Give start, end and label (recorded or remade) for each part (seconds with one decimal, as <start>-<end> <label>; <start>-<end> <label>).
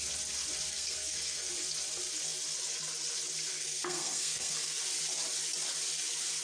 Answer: 0.0-0.7 recorded; 0.7-1.5 remade; 1.5-3.5 recorded; 3.5-4.8 remade; 4.8-6.4 recorded